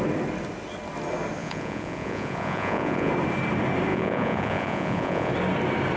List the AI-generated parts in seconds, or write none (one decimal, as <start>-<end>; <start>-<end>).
1.4-3.1; 3.9-5.3